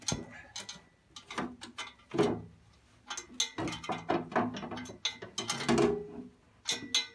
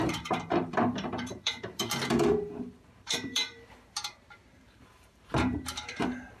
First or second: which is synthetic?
second